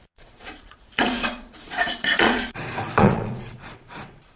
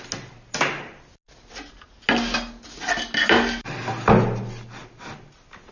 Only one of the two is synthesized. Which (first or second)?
first